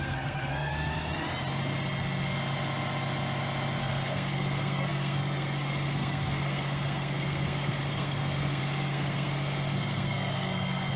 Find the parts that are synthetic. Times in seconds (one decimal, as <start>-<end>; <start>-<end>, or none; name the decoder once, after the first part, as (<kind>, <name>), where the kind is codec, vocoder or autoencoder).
0.0-0.7 (codec, SNAC); 3.8-11.0